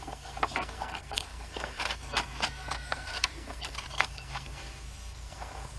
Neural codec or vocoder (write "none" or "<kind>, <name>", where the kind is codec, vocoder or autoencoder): codec, SNAC